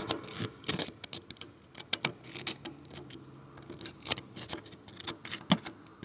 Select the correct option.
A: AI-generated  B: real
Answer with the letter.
B